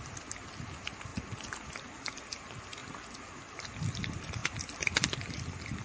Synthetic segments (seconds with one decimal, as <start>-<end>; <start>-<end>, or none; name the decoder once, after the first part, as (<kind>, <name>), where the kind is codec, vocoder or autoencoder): none